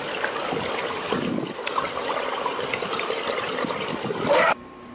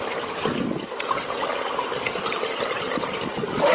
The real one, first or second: second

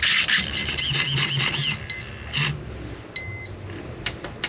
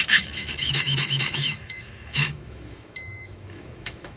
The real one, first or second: first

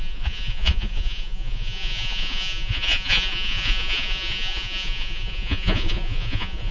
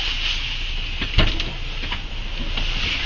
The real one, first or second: second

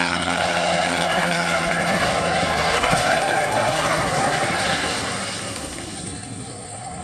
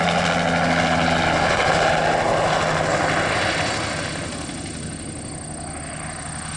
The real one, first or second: second